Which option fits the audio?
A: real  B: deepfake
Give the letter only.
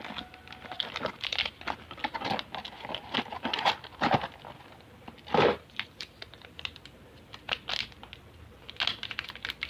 A